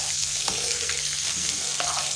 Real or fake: fake